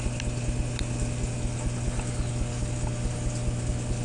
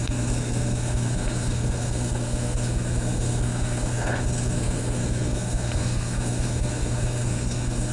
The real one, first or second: first